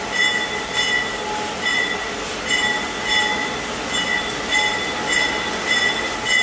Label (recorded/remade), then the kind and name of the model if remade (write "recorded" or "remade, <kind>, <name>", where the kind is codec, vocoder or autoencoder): recorded